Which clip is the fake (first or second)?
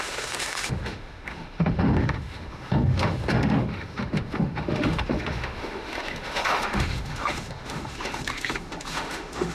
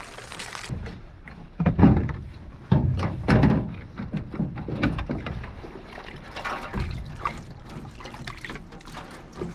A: first